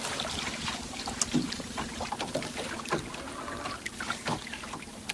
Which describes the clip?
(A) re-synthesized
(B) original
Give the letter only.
B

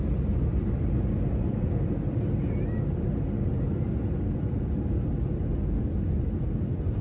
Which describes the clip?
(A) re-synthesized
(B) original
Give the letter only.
B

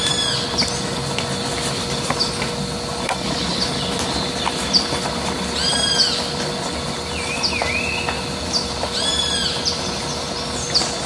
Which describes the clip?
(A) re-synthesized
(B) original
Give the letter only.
B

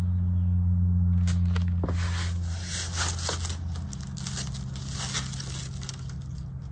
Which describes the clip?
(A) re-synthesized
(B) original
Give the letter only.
B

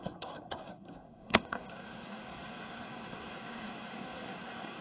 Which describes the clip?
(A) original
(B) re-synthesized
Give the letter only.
B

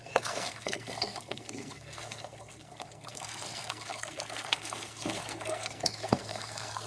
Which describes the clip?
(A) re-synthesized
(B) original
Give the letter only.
A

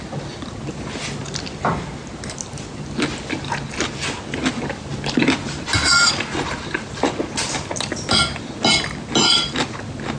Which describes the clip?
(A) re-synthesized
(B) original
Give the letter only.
B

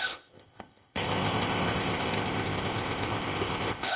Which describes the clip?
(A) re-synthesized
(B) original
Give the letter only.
A